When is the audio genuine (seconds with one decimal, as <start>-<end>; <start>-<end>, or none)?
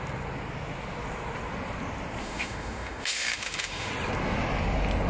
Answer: 0.0-2.2; 3.9-5.1